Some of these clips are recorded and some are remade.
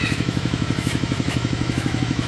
remade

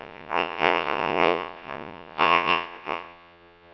remade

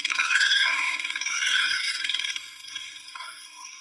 remade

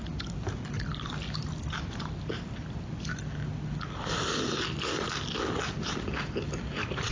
recorded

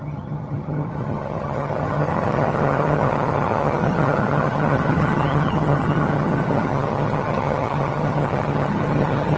remade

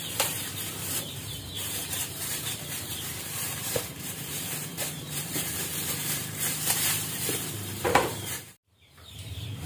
remade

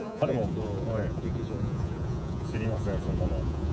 remade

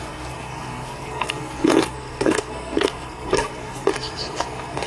remade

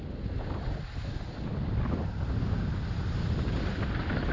recorded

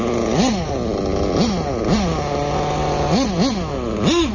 recorded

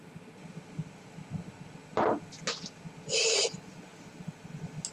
recorded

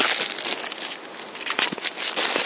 recorded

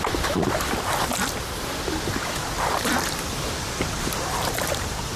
recorded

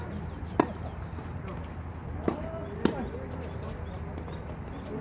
recorded